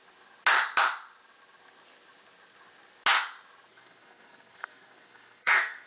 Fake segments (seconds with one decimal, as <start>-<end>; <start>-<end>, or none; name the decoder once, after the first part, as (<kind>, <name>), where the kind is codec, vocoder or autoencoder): 3.7-5.9 (codec, SNAC)